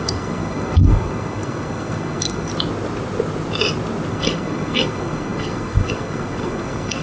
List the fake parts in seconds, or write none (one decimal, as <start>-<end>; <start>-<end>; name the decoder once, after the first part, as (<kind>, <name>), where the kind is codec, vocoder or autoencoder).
0.0-2.5 (codec, SNAC); 4.1-7.0